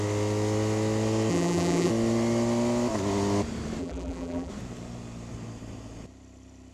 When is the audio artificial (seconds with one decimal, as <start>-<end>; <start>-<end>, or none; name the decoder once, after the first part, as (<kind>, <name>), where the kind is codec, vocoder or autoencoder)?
1.3-1.9 (vocoder, BigVGAN v2); 3.8-4.5